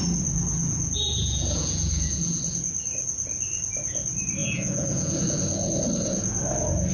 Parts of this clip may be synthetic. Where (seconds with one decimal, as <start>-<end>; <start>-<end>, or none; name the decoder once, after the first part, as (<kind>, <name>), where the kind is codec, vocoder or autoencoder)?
0.6-2.4 (vocoder, Vocos); 4.4-5.2